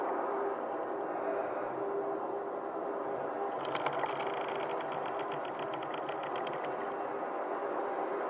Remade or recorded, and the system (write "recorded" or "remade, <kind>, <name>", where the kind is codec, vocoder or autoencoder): recorded